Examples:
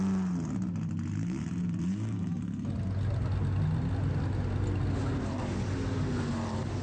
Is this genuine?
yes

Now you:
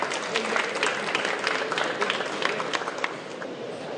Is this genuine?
yes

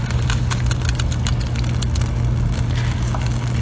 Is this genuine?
yes